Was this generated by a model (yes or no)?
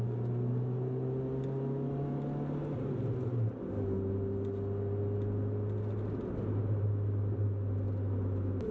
no